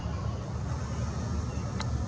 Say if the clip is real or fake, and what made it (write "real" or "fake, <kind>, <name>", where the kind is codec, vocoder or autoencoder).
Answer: real